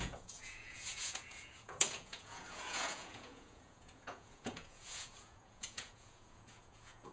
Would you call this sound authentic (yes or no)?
no